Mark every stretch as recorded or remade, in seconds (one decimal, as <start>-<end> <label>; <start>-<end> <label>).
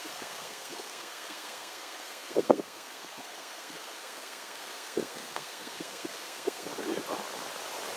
0.0-6.7 remade; 6.7-8.0 recorded